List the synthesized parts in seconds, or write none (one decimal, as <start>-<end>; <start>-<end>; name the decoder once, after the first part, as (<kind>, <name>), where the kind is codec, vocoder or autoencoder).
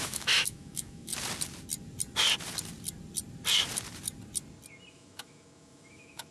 0.0-1.1 (autoencoder, DAC-VAE); 4.9-6.3